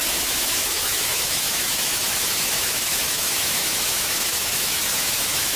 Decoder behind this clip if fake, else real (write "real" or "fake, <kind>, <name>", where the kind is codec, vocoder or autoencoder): fake, autoencoder, DAC-VAE